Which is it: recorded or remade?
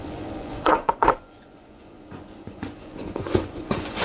remade